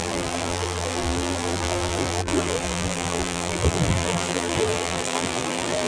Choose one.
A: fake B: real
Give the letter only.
A